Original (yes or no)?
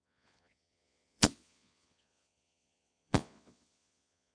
no